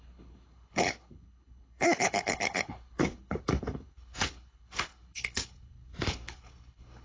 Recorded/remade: remade